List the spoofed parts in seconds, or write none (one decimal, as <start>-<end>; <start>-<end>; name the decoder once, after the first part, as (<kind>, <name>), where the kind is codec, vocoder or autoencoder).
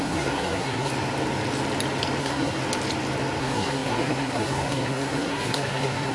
0.0-0.9 (codec, SNAC); 2.2-2.6; 3.4-6.1